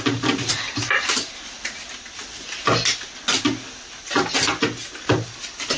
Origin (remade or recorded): recorded